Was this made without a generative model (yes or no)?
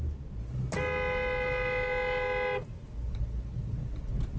yes